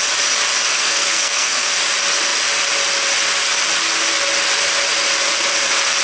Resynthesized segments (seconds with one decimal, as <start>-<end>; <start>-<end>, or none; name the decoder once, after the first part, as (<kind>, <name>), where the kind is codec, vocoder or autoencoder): 0.7-1.7 (codec, SNAC)